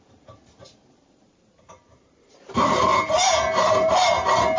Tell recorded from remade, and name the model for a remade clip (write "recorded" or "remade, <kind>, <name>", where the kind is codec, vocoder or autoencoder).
remade, vocoder, BigVGAN v2